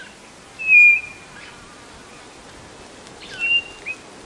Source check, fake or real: real